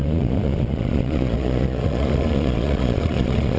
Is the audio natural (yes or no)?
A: no